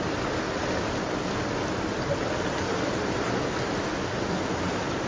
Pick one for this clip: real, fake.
real